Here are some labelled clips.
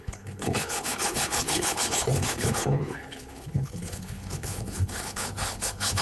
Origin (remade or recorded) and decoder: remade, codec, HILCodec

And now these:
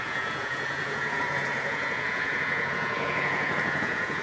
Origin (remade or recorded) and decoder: remade, vocoder, Vocos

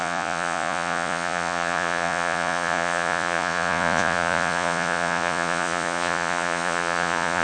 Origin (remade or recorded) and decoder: remade, vocoder, Vocos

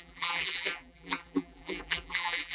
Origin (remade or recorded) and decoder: remade, vocoder, BigVGAN v2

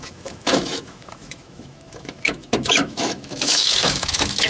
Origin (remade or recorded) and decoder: remade, autoencoder, DAC-VAE